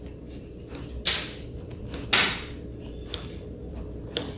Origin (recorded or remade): recorded